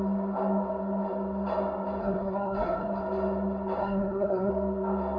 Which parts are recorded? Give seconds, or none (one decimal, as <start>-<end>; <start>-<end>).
0.0-2.0; 3.0-3.8; 4.5-5.2